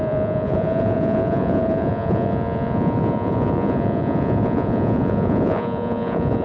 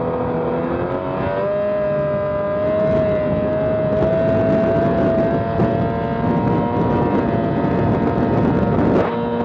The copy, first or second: first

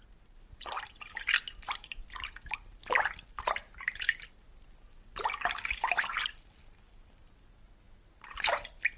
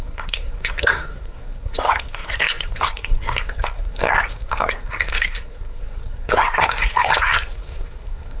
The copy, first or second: second